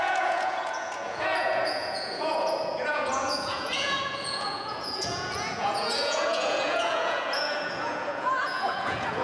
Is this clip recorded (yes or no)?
no